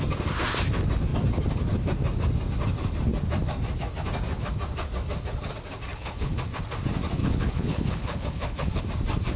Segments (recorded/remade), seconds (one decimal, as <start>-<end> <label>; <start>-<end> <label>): 0.0-5.9 recorded; 5.9-6.4 remade; 6.4-7.2 recorded; 7.2-8.8 remade; 8.8-9.4 recorded